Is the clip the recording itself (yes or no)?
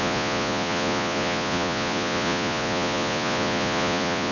no